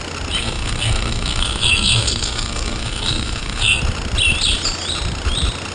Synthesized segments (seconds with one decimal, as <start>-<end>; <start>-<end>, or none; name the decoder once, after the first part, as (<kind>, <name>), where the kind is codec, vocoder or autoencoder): 0.4-3.8 (codec, SNAC)